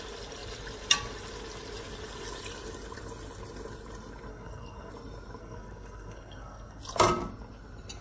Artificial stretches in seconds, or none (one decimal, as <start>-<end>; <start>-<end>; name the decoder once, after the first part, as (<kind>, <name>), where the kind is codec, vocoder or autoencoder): 4.3-4.9 (codec, SNAC); 5.4-6.8